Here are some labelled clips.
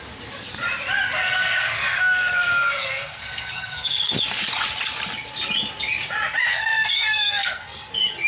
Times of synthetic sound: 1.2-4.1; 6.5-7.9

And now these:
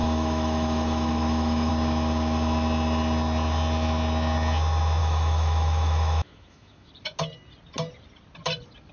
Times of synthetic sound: 0.0-1.7; 5.0-6.9

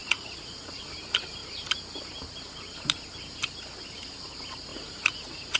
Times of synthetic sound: 0.0-0.6; 4.7-5.6

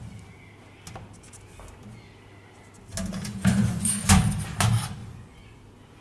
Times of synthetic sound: 3.3-4.0; 5.0-5.6

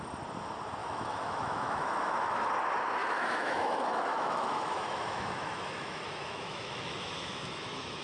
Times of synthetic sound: 0.8-2.5; 3.0-8.0